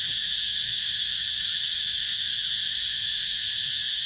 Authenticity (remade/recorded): remade